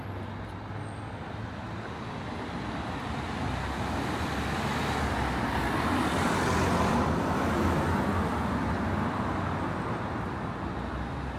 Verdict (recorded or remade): recorded